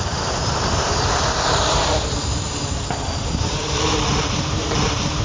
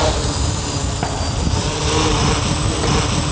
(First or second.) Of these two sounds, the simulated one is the first